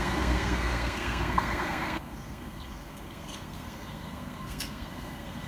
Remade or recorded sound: remade